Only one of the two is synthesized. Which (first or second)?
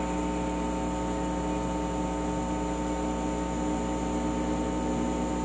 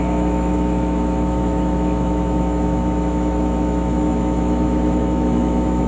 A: second